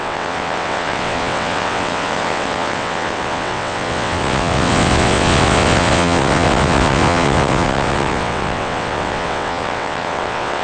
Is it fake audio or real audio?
fake